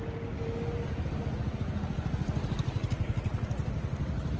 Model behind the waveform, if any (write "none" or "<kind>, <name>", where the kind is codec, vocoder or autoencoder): none